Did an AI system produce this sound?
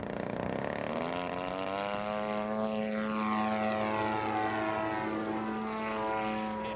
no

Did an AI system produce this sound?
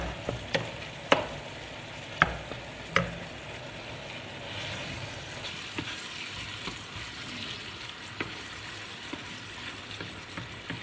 no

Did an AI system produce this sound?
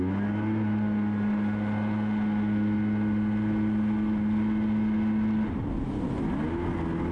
no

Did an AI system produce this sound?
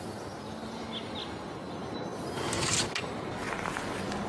no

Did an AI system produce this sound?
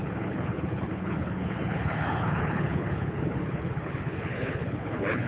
yes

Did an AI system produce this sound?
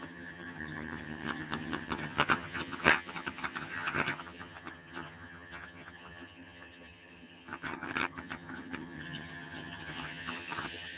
yes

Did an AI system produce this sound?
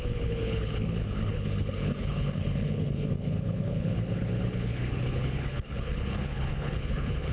yes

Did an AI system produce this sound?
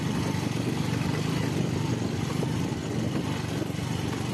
no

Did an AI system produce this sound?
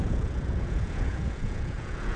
yes